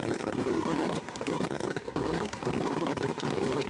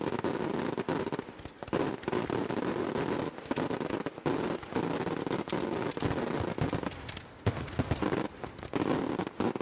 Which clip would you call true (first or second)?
second